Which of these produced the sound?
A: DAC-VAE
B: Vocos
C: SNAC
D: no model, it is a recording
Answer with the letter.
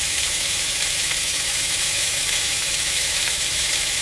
A